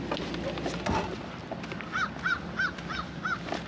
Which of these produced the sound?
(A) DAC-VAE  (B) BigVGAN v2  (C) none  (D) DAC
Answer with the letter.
C